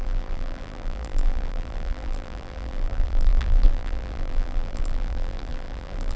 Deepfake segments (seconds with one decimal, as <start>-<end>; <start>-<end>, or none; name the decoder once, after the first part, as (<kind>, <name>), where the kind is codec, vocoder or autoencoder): 0.0-6.2 (vocoder, BigVGAN v2)